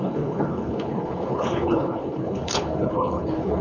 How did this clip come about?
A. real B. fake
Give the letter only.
B